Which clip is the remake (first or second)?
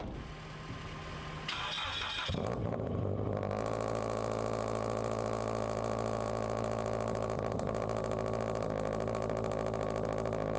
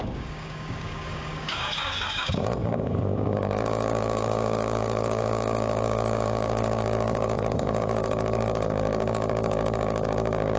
second